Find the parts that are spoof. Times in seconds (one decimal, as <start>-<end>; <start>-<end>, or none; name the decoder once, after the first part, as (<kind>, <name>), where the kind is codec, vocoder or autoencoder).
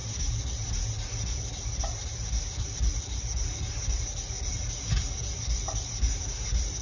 none